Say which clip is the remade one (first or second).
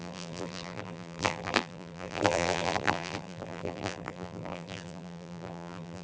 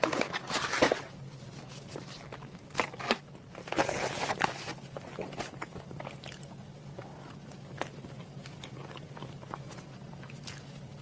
first